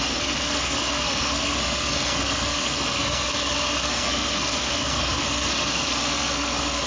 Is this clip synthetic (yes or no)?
yes